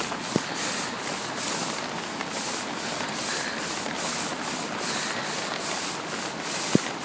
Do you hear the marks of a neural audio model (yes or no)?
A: no